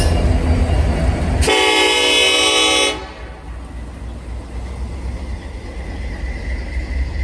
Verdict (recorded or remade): recorded